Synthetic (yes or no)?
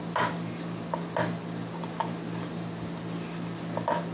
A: no